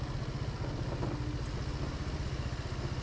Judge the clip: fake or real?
real